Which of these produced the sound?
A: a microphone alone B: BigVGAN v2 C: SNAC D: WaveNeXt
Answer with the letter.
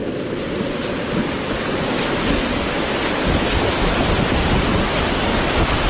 A